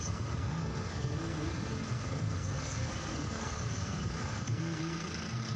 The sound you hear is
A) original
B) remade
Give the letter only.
B